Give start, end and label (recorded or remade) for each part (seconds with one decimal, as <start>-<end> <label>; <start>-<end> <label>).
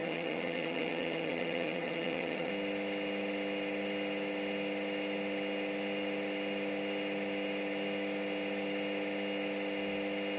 0.0-2.5 remade; 2.5-10.4 recorded